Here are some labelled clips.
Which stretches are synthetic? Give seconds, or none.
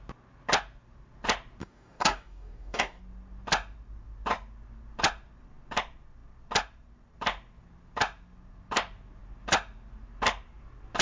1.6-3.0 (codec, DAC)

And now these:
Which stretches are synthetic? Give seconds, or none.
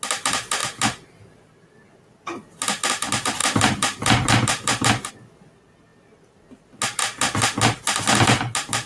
3.4-5.1 (vocoder, BigVGAN v2)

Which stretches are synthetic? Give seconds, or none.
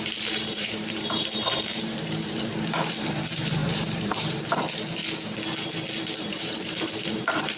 0.0-5.0 (vocoder, BigVGAN v2); 6.0-7.6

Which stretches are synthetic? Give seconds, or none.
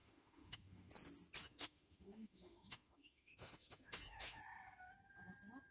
0.0-0.9 (autoencoder, DAC-VAE); 1.4-4.4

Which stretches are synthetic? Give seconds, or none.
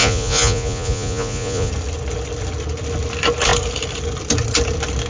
0.0-1.7 (vocoder, Vocos)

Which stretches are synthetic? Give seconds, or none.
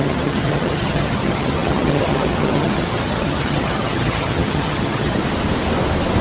0.0-5.2 (vocoder, HiFi-GAN)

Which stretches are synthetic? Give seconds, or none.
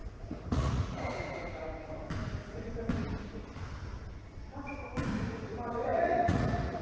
0.0-1.5 (vocoder, Vocos); 5.9-6.8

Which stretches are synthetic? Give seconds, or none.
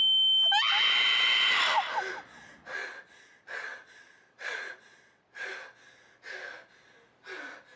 2.8-5.5 (vocoder, Vocos)